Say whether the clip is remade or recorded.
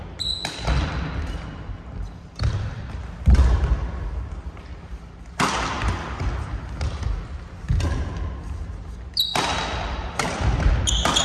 recorded